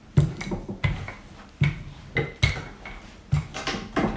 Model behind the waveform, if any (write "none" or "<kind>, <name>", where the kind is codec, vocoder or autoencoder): none